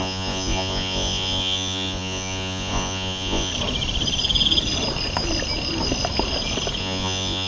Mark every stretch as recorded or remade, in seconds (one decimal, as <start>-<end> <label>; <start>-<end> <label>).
0.0-3.5 remade; 3.5-6.8 recorded; 6.8-7.5 remade